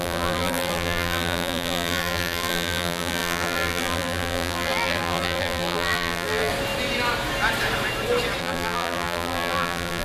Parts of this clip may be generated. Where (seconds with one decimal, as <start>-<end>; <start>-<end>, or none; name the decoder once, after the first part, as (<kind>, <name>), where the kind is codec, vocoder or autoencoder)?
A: 0.0-6.5 (vocoder, BigVGAN v2); 8.4-10.0